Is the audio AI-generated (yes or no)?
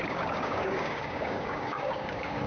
yes